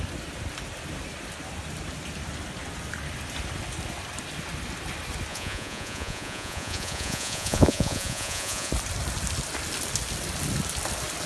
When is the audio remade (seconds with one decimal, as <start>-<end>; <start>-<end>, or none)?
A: 5.3-8.7